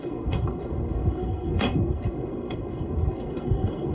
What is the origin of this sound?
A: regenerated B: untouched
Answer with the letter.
A